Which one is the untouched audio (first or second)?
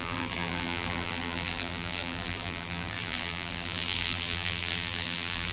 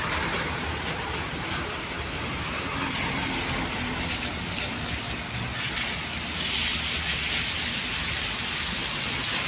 second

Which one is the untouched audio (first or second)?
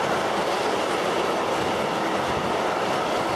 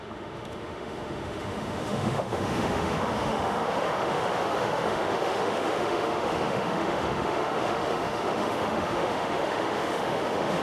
first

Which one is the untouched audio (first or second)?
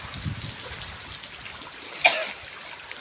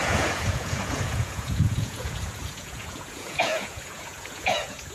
first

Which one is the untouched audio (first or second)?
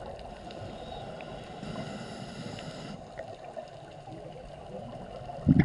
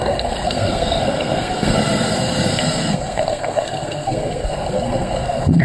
first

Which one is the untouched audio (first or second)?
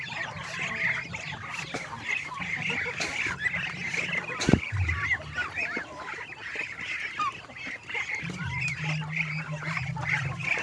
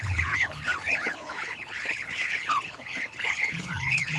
first